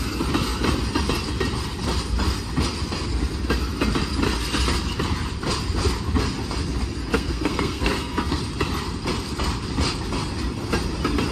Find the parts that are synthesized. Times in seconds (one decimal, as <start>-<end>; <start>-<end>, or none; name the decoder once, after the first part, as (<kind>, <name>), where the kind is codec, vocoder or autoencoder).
7.1-8.4 (codec, SNAC)